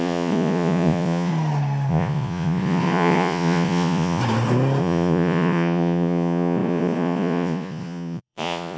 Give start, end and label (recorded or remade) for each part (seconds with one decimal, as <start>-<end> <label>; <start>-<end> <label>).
0.0-1.3 remade; 1.3-1.9 recorded; 1.9-4.2 remade; 4.2-4.8 recorded; 4.8-8.8 remade